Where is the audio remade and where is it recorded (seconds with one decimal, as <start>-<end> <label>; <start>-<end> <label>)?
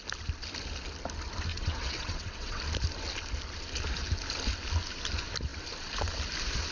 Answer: 0.0-1.5 recorded; 1.5-2.6 remade; 2.6-6.7 recorded